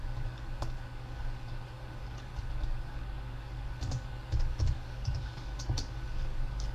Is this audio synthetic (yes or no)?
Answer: yes